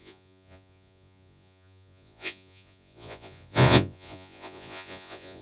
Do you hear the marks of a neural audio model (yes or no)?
yes